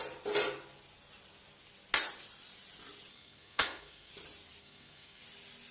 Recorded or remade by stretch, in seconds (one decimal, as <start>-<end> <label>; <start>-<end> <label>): 0.0-3.1 recorded; 3.1-4.1 remade; 4.1-4.6 recorded; 4.6-5.2 remade; 5.2-5.7 recorded